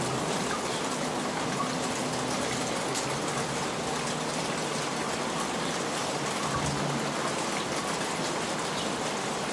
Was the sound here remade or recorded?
recorded